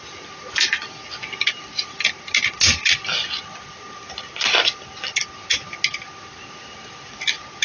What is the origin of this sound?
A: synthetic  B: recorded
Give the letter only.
B